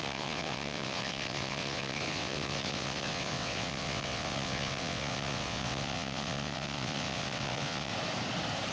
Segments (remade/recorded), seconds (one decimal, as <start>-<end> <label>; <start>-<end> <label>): 0.0-7.9 remade; 7.9-8.7 recorded